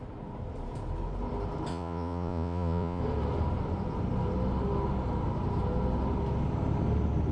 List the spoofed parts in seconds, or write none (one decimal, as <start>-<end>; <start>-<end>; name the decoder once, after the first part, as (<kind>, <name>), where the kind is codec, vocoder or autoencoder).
1.7-3.0 (vocoder, Vocos)